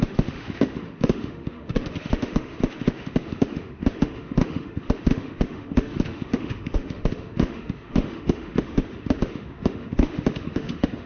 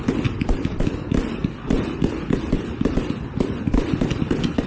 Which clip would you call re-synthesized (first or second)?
first